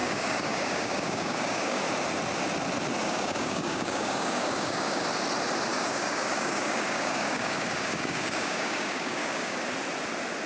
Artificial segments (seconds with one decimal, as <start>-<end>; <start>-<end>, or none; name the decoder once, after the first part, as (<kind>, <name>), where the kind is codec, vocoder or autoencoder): 0.0-1.8 (codec, DAC); 3.0-5.0; 5.7-9.6